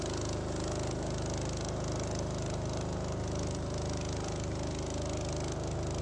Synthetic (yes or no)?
no